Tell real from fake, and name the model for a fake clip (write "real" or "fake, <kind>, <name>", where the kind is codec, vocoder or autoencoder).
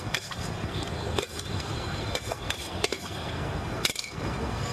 fake, codec, SNAC